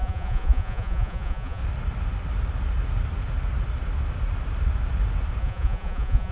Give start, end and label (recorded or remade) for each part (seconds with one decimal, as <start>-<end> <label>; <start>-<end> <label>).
0.0-1.6 remade; 1.6-5.4 recorded; 5.4-6.3 remade